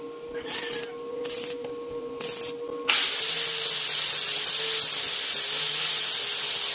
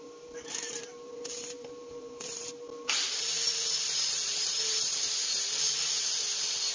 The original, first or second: first